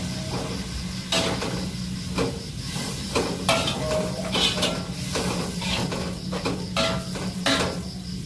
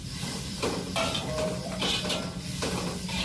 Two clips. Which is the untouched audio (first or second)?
first